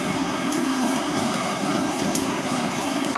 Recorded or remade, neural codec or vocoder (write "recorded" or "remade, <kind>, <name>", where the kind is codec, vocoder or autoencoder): remade, codec, SNAC